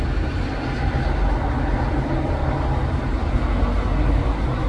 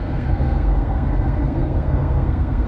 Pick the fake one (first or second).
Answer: second